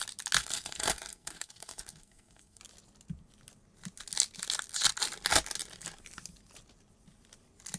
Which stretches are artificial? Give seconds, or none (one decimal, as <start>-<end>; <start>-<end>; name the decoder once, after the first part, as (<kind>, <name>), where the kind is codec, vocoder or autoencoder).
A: 0.4-2.6 (codec, SNAC)